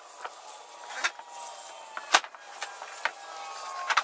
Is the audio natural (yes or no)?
yes